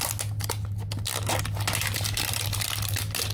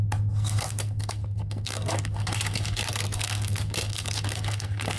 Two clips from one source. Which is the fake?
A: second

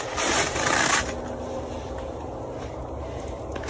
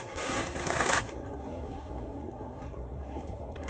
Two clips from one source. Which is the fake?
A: second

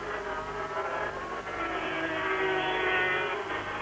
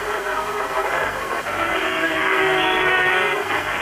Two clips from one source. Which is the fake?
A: second